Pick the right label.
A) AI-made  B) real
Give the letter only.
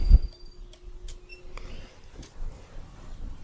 B